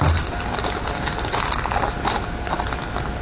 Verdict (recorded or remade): recorded